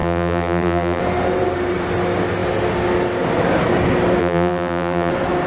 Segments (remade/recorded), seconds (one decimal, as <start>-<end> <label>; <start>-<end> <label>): 0.0-1.0 remade; 1.0-4.2 recorded; 4.2-5.1 remade; 5.1-5.5 recorded